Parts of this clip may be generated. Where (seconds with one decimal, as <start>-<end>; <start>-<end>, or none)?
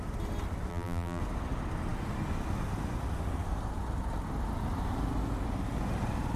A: 0.7-1.2